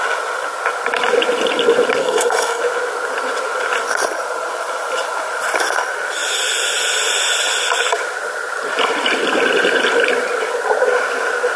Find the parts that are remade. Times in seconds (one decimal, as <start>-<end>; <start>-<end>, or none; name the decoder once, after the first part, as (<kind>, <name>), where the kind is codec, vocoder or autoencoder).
2.0-2.6 (codec, SNAC)